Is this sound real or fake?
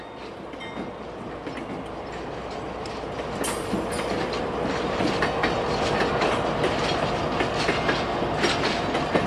real